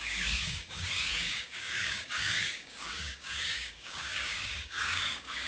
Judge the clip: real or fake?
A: fake